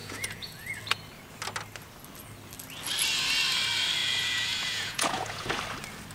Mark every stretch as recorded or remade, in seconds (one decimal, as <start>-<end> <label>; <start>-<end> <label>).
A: 0.0-0.8 remade; 0.8-4.0 recorded; 4.0-5.6 remade; 5.6-6.1 recorded

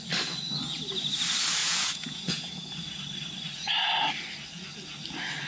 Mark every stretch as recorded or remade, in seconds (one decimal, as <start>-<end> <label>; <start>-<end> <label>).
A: 0.0-1.6 recorded; 1.6-2.7 remade; 2.7-5.5 recorded

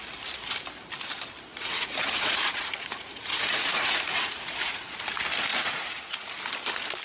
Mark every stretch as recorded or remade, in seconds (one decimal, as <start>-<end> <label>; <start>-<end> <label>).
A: 0.0-1.5 recorded; 1.5-5.0 remade; 5.0-5.5 recorded; 5.5-6.3 remade; 6.3-7.0 recorded

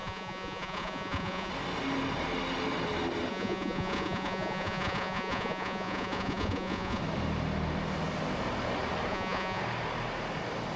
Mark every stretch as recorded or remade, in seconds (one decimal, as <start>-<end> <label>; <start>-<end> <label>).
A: 0.0-1.5 remade; 1.5-3.3 recorded; 3.3-7.0 remade; 7.0-9.1 recorded; 9.1-9.6 remade; 9.6-10.8 recorded

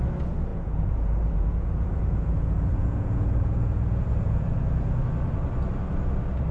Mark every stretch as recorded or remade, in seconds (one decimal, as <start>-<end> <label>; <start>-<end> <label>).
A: 0.0-0.5 recorded; 0.5-4.4 remade; 4.4-6.5 recorded